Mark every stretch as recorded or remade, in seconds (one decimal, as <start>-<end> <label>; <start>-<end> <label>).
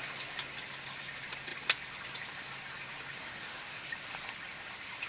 0.0-3.2 recorded; 3.2-3.9 remade; 3.9-5.1 recorded